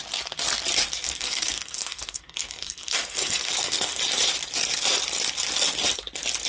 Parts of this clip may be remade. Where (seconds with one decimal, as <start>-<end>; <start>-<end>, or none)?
1.0-4.0